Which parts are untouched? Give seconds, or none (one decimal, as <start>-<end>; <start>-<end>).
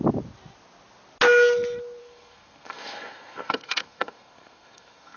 0.0-2.0